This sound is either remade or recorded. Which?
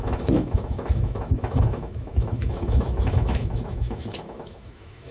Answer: remade